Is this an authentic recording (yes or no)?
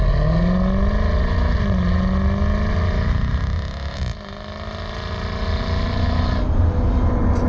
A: yes